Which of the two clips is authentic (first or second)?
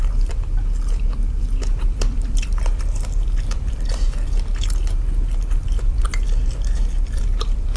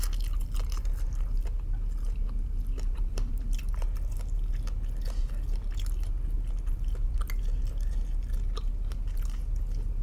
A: second